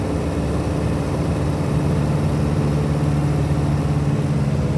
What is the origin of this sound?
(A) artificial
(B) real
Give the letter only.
B